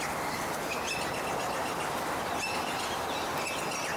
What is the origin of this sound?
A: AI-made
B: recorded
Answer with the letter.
B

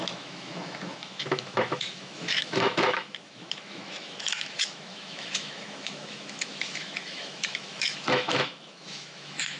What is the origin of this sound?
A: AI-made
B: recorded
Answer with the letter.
A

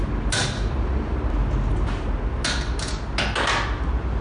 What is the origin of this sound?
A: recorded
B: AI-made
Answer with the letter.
A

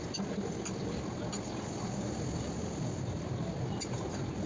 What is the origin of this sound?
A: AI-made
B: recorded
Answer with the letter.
B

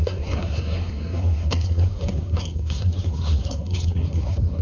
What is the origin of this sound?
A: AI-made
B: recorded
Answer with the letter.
A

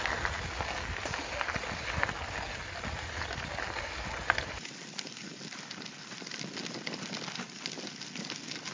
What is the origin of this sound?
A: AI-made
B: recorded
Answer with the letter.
B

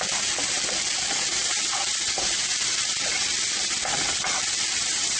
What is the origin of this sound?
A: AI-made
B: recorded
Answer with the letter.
B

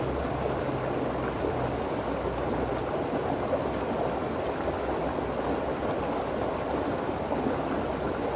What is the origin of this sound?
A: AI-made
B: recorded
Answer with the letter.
B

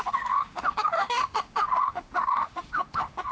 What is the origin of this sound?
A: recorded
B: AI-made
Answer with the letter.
B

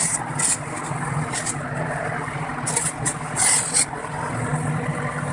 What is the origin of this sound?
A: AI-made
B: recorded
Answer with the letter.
B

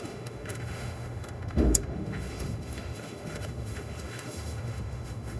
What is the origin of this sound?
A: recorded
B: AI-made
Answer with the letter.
B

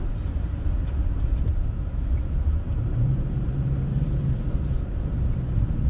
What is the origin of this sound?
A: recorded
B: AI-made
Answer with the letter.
B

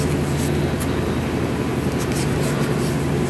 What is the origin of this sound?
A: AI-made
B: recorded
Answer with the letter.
B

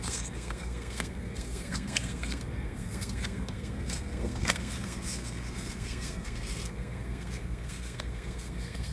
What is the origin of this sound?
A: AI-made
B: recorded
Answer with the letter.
A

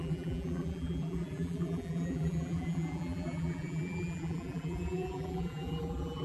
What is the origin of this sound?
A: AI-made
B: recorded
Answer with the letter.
A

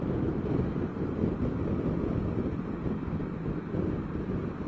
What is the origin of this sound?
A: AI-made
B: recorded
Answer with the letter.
B